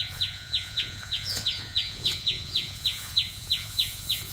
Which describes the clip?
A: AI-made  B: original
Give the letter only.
A